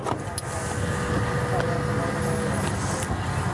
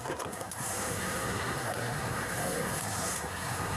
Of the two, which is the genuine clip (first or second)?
first